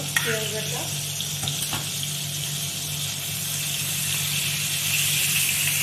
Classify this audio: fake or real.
real